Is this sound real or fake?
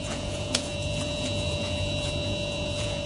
fake